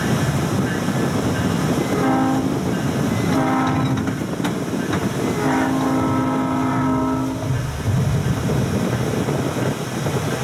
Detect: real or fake real